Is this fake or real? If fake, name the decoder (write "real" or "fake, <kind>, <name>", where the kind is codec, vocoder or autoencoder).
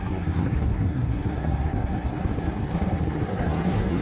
fake, codec, SNAC